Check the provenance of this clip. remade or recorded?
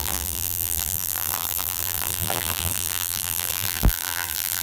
remade